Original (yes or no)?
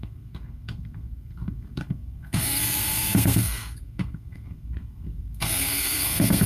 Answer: no